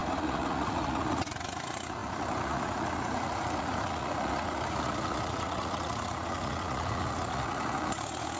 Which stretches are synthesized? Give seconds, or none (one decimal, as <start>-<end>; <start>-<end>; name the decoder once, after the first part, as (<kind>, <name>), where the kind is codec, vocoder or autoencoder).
0.0-8.4 (vocoder, Vocos)